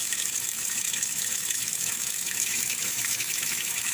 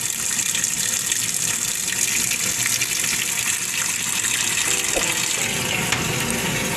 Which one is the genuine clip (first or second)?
second